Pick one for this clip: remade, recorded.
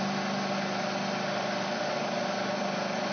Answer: recorded